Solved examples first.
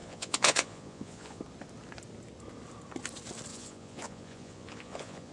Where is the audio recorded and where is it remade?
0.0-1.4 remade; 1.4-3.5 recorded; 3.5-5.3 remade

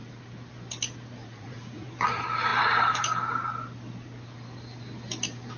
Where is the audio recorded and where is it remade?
0.0-1.2 recorded; 1.2-1.9 remade; 1.9-5.6 recorded

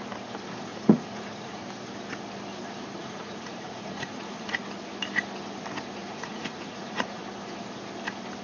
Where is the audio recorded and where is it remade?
0.0-0.7 recorded; 0.7-1.6 remade; 1.6-3.0 recorded; 3.0-4.6 remade; 4.6-6.0 recorded; 6.0-7.2 remade; 7.2-8.4 recorded

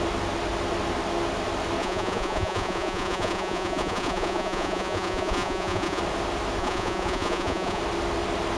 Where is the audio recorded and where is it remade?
0.0-1.8 recorded; 1.8-6.0 remade; 6.0-6.6 recorded; 6.6-7.8 remade; 7.8-8.6 recorded

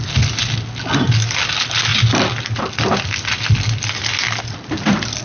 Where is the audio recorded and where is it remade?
0.0-5.2 recorded

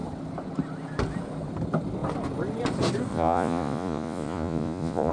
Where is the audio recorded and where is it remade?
0.0-3.1 recorded; 3.1-5.1 remade